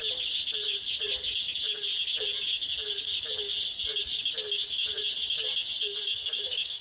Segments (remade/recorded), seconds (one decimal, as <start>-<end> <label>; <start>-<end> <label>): 0.0-6.1 recorded; 6.1-6.8 remade